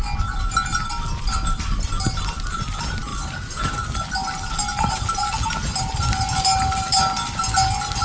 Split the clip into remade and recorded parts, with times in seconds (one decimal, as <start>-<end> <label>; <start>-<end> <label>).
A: 0.0-8.0 recorded